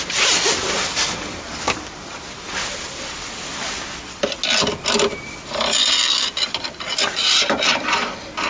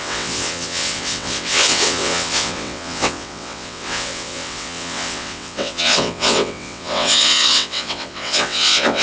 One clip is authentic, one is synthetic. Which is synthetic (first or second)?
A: second